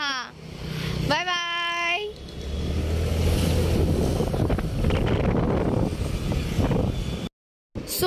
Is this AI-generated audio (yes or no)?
no